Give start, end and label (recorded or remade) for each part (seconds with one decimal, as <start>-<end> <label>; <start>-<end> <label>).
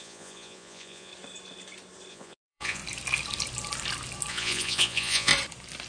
0.0-1.1 remade; 1.1-2.1 recorded; 2.1-2.8 remade; 2.8-4.3 recorded; 4.3-5.3 remade; 5.3-5.9 recorded